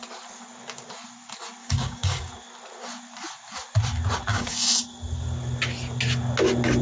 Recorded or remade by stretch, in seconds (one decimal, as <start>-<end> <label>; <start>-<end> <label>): 0.0-1.6 recorded; 1.6-2.3 remade; 2.3-4.3 recorded; 4.3-4.8 remade; 4.8-6.8 recorded